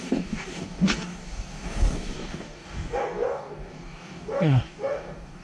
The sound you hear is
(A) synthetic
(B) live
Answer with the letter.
A